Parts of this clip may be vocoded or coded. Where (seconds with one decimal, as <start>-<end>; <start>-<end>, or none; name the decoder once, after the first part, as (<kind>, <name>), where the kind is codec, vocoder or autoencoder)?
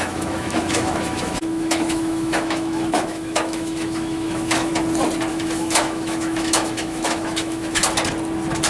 0.0-4.7 (autoencoder, DAC-VAE); 5.3-7.8